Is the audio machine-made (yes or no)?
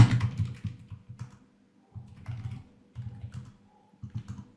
no